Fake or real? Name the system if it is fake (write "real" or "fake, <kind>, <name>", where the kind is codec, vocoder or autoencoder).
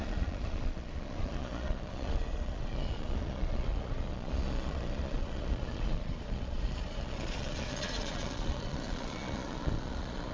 fake, vocoder, Vocos